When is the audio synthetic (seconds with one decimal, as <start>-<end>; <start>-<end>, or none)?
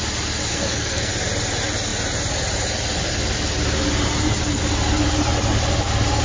0.5-1.1